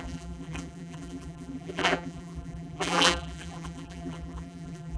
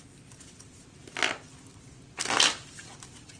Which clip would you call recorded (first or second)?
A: second